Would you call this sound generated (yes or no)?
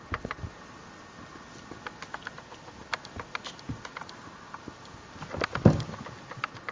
no